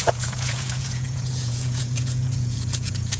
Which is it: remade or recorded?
remade